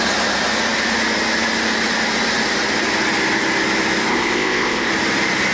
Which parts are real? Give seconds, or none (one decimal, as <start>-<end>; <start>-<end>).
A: 0.0-4.1; 4.9-5.5